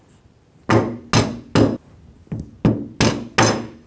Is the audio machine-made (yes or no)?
no